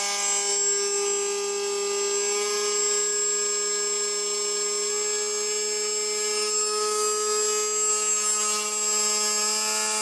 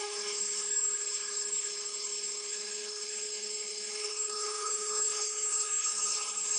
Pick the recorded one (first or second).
first